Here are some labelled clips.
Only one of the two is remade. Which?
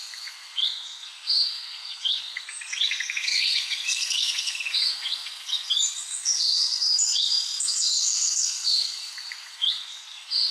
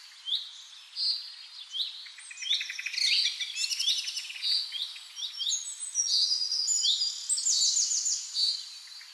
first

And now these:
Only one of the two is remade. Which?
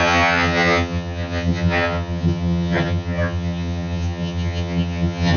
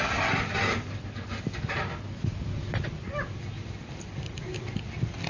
first